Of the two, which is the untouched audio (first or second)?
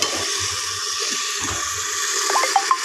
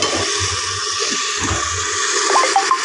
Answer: second